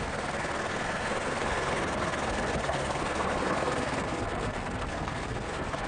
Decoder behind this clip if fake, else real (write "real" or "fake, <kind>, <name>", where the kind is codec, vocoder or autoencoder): fake, codec, SNAC